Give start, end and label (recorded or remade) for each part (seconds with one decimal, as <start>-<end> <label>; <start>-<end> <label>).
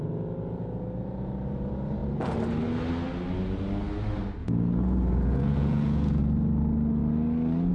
0.0-4.4 recorded; 4.4-6.2 remade; 6.2-7.7 recorded